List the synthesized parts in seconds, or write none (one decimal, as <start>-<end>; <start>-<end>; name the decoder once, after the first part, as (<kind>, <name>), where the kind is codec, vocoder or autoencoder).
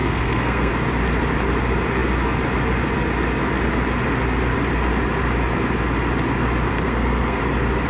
0.0-0.7 (codec, SNAC); 6.7-7.4